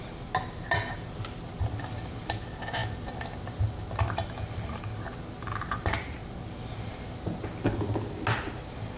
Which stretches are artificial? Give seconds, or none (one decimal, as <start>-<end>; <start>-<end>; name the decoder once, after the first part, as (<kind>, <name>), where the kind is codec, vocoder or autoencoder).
none